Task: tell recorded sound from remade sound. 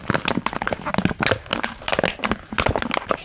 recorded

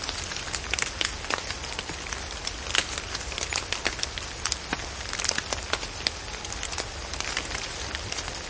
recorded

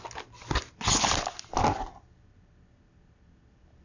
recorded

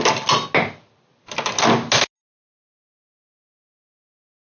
recorded